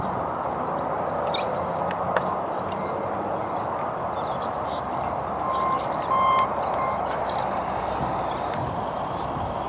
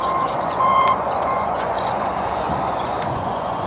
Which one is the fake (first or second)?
second